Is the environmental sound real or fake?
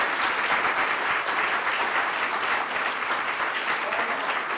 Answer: real